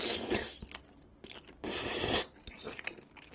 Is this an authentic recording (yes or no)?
yes